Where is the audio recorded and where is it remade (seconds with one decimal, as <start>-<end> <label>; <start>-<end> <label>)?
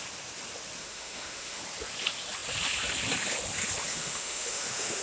0.0-0.8 recorded; 0.8-1.6 remade; 1.6-3.9 recorded; 3.9-5.0 remade